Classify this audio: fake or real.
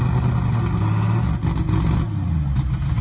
real